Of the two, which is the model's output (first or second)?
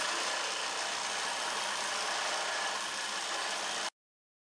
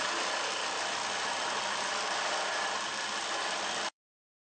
second